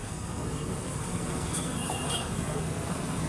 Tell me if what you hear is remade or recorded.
remade